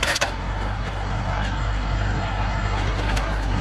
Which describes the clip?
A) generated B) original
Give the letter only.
A